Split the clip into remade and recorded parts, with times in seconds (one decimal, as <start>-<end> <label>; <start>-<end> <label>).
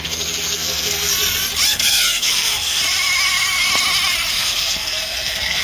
0.0-1.1 remade; 1.1-1.7 recorded; 1.7-2.8 remade; 2.8-4.3 recorded; 4.3-5.6 remade